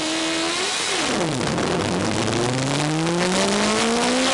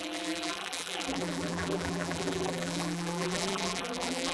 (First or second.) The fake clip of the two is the second